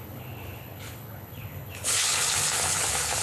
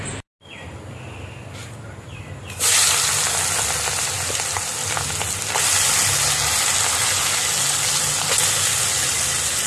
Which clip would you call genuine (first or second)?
second